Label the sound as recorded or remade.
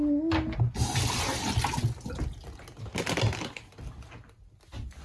recorded